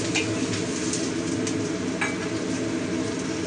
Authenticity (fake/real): real